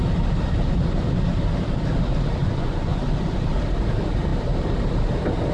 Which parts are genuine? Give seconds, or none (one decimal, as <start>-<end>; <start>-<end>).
0.0-2.4; 3.0-5.5